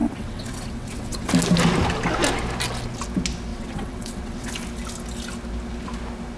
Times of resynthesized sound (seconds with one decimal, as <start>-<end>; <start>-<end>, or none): 0.0-1.3; 3.5-4.5